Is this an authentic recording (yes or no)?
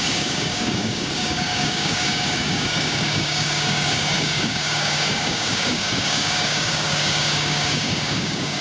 no